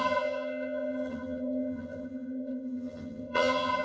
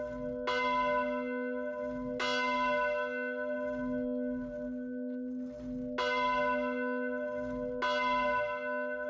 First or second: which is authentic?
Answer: second